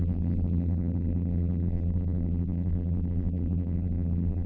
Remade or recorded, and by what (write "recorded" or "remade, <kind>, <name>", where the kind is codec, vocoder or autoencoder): remade, vocoder, BigVGAN v2